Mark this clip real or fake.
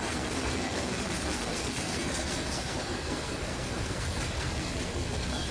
fake